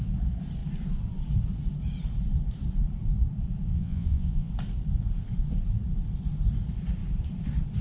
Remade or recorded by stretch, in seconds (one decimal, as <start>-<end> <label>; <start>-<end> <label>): 0.0-3.7 recorded; 3.7-4.5 remade; 4.5-7.8 recorded